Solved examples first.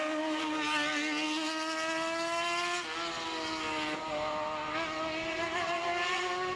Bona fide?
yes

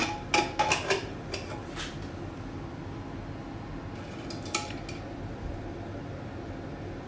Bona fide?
yes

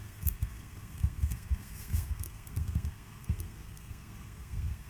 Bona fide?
no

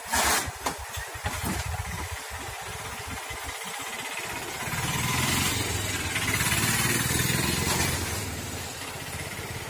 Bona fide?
yes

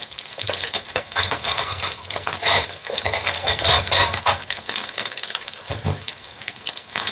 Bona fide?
no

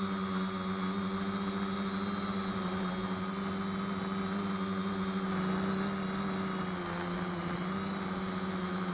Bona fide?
yes